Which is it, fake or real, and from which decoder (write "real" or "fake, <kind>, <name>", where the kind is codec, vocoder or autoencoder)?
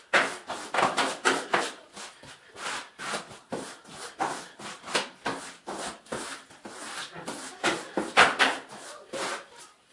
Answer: real